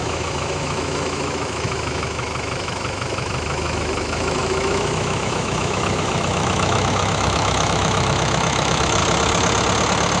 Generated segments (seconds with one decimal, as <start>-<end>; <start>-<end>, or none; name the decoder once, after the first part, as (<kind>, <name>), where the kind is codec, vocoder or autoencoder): 0.0-9.0 (autoencoder, DAC-VAE)